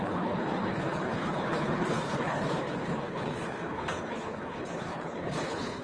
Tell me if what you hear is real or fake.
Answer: fake